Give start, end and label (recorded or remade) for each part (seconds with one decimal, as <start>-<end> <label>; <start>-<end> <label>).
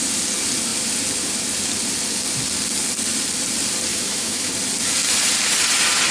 0.0-3.9 recorded; 3.9-4.5 remade; 4.5-6.1 recorded